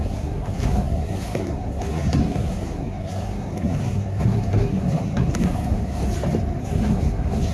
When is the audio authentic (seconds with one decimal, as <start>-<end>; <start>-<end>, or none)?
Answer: 6.0-6.6